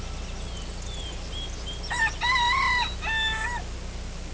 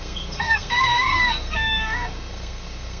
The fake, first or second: second